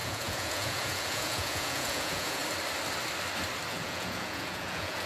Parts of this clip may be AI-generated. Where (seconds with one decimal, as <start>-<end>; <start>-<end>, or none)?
0.0-2.4; 3.7-5.1